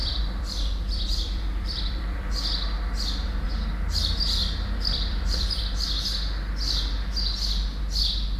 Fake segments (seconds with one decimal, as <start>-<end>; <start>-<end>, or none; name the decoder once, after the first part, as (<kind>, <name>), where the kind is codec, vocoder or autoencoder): 0.0-2.3 (vocoder, BigVGAN v2); 4.4-5.6

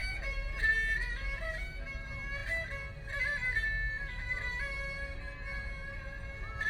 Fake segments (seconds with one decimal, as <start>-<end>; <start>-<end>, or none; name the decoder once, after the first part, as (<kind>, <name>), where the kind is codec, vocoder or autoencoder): 0.0-0.7 (vocoder, BigVGAN v2)

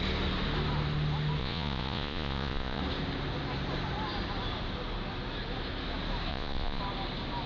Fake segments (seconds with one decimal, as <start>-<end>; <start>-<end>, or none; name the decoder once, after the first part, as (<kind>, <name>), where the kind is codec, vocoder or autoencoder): 1.4-2.8 (vocoder, Vocos); 6.3-6.8